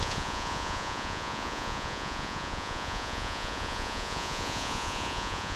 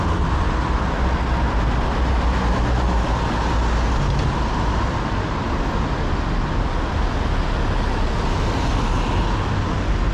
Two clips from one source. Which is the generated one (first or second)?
first